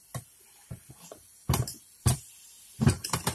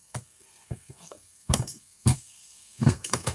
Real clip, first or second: first